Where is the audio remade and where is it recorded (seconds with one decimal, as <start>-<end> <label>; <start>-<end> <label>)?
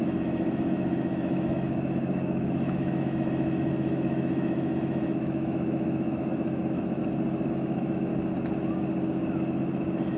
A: 0.0-7.0 remade; 7.0-7.5 recorded; 7.5-8.1 remade; 8.1-10.2 recorded